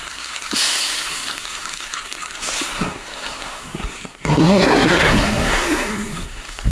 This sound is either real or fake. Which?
fake